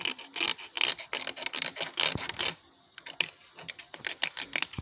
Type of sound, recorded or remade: recorded